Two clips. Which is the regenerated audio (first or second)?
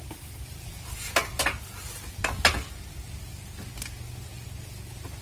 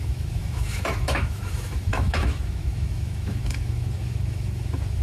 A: second